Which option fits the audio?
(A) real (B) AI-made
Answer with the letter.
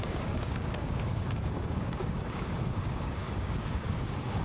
B